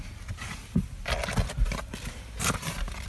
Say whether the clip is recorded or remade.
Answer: recorded